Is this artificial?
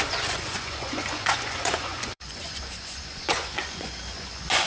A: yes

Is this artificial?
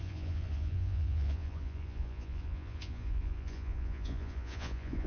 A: yes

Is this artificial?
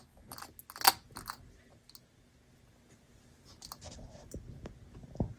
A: no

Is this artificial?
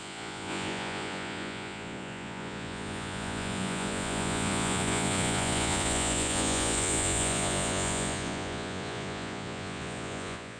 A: yes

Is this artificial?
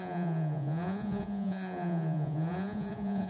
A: yes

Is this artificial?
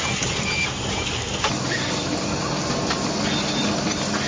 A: no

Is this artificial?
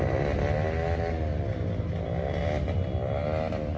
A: no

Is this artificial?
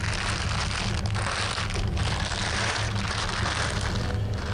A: no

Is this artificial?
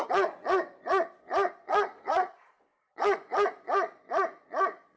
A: yes